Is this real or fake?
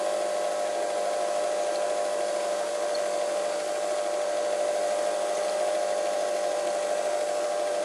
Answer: real